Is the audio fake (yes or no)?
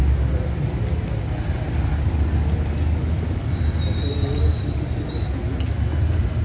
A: no